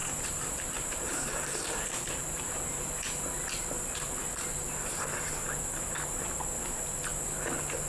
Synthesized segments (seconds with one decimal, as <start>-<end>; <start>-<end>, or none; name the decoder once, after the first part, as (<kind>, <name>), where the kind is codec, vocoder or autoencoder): 0.0-2.8 (vocoder, BigVGAN v2)